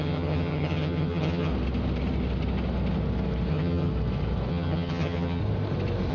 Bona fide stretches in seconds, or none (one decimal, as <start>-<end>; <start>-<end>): 1.5-3.5; 3.9-4.5; 5.4-6.1